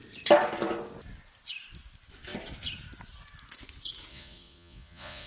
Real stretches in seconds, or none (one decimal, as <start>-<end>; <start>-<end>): 0.0-4.1